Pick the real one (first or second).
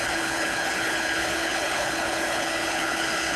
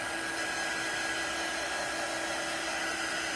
second